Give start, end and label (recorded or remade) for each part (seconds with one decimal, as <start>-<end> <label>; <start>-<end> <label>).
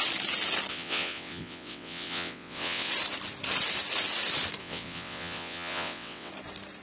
0.0-0.7 recorded; 0.7-2.9 remade; 2.9-4.6 recorded; 4.6-6.3 remade; 6.3-6.8 recorded